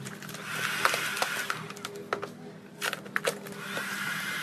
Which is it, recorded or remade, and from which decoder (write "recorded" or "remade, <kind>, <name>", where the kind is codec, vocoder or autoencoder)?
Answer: recorded